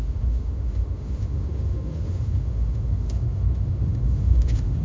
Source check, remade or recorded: remade